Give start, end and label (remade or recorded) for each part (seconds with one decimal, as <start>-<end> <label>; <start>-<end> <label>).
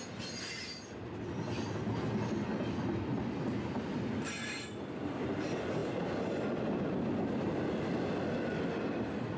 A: 0.0-9.4 recorded